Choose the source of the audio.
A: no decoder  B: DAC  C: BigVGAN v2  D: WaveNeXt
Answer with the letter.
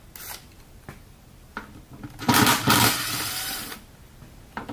A